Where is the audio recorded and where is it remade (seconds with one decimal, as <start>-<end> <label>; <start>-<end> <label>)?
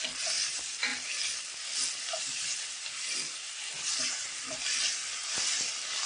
0.0-6.1 recorded